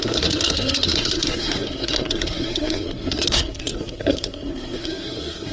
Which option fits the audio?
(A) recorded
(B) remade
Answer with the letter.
B